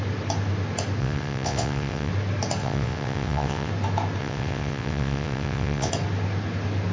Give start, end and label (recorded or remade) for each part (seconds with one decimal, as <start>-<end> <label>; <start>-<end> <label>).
0.0-1.0 recorded; 1.0-2.1 remade; 2.1-2.6 recorded; 2.6-3.7 remade; 3.7-4.2 recorded; 4.2-5.9 remade; 5.9-6.9 recorded